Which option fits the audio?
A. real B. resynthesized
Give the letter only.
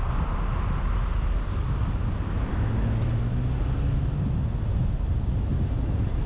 A